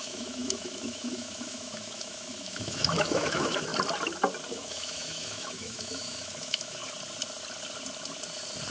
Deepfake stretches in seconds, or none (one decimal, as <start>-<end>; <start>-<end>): 0.0-3.7; 4.5-6.8